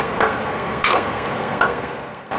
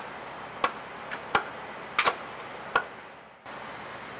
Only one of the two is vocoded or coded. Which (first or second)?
first